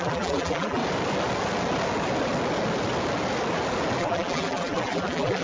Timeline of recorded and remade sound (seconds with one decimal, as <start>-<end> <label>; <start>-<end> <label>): 0.0-0.8 remade; 0.8-4.0 recorded; 4.0-5.4 remade